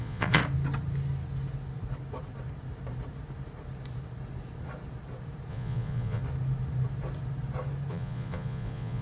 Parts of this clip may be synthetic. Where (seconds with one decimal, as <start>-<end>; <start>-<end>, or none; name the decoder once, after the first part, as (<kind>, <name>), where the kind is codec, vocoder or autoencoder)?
0.0-0.4 (vocoder, Vocos); 5.5-6.2; 7.9-9.0